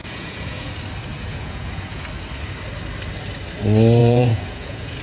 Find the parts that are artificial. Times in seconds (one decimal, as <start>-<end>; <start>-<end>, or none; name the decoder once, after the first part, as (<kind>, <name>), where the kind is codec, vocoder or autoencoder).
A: 0.0-0.7 (vocoder, Vocos); 1.1-2.0; 4.0-5.0